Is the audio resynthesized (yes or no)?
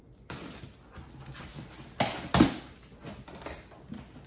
no